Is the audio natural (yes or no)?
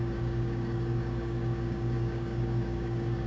no